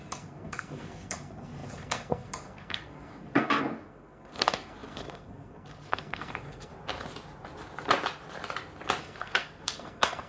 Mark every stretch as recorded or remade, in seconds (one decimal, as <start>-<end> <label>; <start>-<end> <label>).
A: 0.0-6.7 remade; 6.7-9.0 recorded; 9.0-10.3 remade